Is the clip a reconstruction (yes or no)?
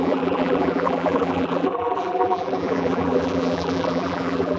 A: yes